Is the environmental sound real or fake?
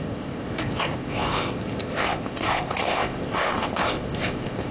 fake